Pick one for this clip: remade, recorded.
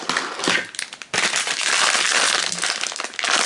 recorded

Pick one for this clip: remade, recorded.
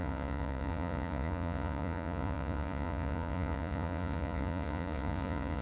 remade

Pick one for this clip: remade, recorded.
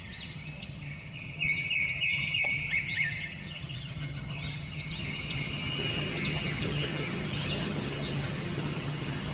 remade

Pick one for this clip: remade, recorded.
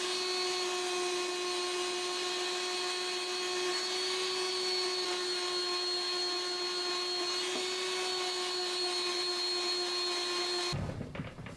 recorded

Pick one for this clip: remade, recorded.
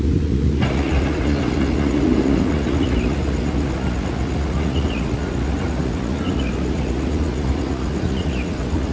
remade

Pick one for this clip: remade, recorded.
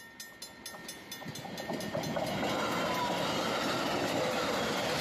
recorded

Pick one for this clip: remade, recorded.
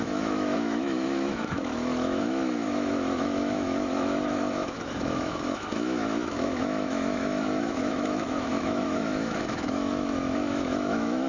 remade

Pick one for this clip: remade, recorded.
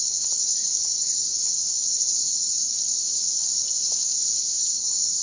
remade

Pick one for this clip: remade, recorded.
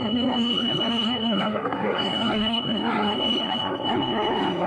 remade